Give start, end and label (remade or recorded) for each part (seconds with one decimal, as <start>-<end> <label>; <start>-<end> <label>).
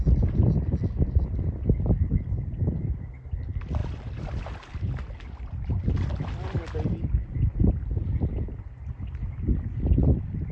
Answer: 0.0-10.5 recorded